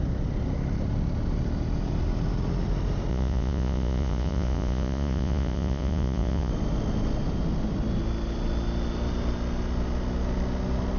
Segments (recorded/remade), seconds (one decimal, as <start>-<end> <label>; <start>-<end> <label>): 0.0-3.1 recorded; 3.1-6.5 remade; 6.5-11.0 recorded